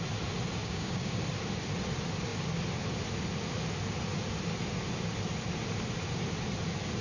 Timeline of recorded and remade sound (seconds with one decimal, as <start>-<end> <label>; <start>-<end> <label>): 0.0-0.6 recorded; 0.6-1.2 remade; 1.2-7.0 recorded